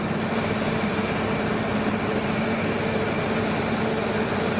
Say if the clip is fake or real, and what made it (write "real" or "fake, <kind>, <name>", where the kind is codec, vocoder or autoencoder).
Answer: fake, vocoder, BigVGAN v2